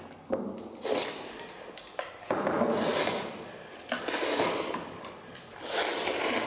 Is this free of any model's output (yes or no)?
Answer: yes